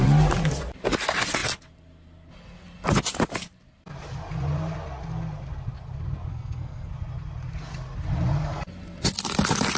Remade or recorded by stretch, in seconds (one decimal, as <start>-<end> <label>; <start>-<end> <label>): 0.0-6.3 recorded; 6.3-6.9 remade; 6.9-9.8 recorded